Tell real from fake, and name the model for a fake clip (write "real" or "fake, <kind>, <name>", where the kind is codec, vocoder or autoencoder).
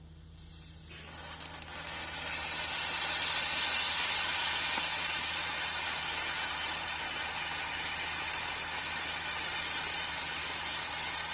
real